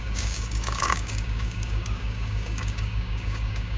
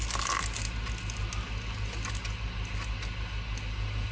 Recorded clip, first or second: second